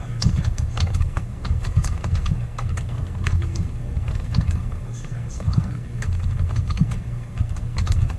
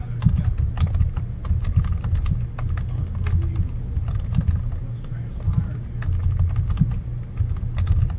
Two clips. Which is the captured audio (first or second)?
second